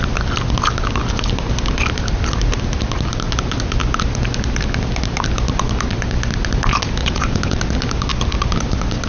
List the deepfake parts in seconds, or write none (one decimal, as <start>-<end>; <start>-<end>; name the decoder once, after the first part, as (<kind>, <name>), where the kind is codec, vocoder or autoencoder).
7.0-7.6 (vocoder, WaveNeXt)